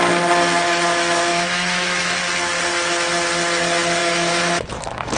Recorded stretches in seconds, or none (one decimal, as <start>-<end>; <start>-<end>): 0.0-1.3; 2.2-4.0